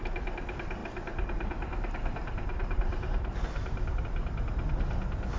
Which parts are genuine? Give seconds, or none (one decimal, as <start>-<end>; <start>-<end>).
0.0-0.8; 4.0-5.4